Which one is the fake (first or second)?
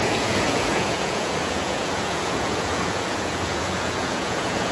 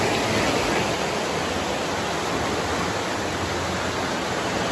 first